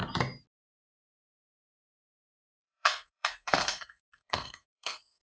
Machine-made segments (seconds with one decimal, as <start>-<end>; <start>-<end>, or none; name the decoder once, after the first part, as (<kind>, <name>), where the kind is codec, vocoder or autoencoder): 2.6-5.2 (codec, SNAC)